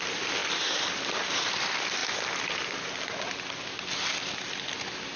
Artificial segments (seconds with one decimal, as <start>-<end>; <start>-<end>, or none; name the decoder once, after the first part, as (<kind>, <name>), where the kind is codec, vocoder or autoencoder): none